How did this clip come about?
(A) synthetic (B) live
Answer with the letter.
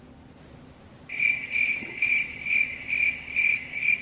B